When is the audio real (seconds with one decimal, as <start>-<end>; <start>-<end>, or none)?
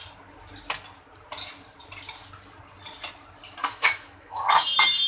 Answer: 0.0-3.6